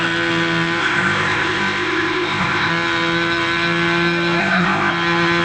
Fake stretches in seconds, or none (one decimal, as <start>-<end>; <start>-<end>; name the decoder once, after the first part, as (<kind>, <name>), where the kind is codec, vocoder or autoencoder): 0.8-2.7 (codec, ZipCodec); 4.4-4.9

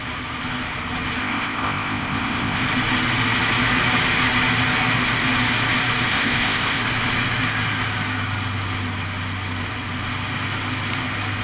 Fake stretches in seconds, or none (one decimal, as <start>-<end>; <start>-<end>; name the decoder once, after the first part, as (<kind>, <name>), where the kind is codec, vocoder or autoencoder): 1.2-2.6 (codec, ZipCodec); 6.1-6.8

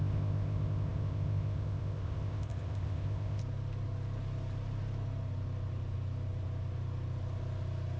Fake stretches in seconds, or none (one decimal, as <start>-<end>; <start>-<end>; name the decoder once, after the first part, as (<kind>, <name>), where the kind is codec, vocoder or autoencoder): 0.0-3.4 (codec, ZipCodec)

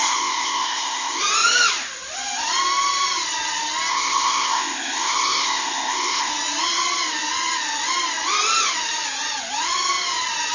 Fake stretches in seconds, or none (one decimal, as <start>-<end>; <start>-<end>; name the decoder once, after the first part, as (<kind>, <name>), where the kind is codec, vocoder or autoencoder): 0.0-1.2 (codec, ZipCodec); 3.9-6.3

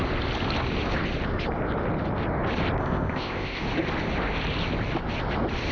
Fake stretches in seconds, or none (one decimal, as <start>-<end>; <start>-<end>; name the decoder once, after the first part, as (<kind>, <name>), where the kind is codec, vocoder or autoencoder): 2.8-3.6 (codec, ZipCodec)

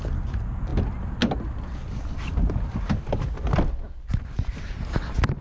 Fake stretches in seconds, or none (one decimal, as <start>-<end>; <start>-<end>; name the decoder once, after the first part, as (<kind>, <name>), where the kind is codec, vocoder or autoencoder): none

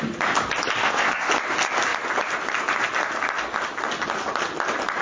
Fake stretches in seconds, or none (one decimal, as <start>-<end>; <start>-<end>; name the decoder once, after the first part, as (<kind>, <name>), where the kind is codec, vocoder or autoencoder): 0.8-1.3 (codec, ZipCodec)